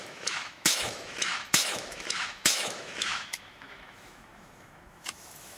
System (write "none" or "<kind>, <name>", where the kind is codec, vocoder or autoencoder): autoencoder, DAC-VAE